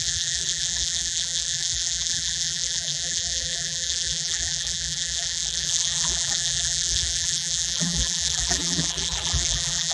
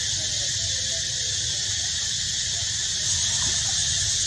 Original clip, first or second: second